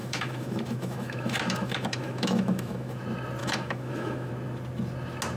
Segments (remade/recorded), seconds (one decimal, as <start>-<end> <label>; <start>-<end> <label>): 0.0-3.0 remade; 3.0-3.4 recorded; 3.4-4.3 remade; 4.3-5.4 recorded